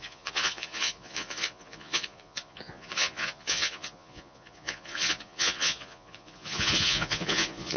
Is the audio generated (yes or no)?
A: yes